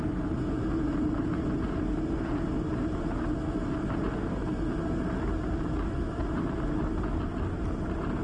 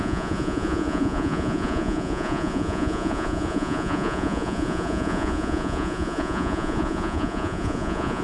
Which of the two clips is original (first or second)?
first